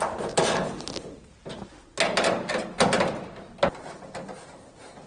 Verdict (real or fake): real